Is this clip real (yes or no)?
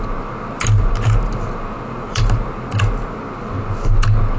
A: yes